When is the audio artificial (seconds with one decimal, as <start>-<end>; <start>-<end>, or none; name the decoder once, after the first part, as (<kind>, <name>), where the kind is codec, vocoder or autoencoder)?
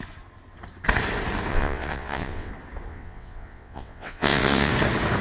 1.5-2.5 (vocoder, WaveNeXt); 2.9-4.7